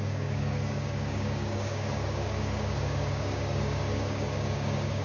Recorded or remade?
remade